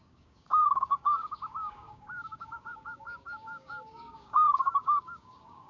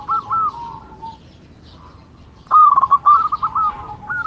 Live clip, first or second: second